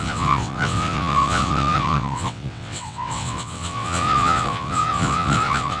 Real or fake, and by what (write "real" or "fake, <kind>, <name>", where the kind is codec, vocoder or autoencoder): fake, vocoder, WaveNeXt